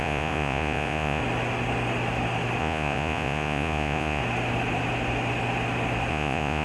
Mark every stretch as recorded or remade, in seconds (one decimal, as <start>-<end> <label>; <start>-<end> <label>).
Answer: 0.0-1.2 remade; 1.2-2.6 recorded; 2.6-4.2 remade; 4.2-6.1 recorded; 6.1-6.6 remade